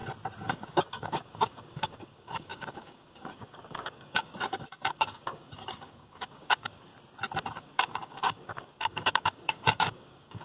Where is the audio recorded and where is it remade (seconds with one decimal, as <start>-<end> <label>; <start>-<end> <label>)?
0.0-0.5 recorded; 0.5-6.9 remade; 6.9-7.5 recorded; 7.5-10.4 remade